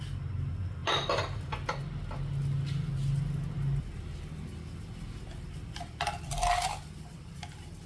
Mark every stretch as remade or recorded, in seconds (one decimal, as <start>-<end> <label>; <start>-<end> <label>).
0.0-7.9 recorded